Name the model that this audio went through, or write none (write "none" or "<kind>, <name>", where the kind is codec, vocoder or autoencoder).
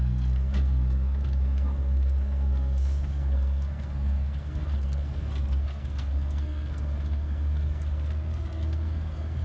codec, SNAC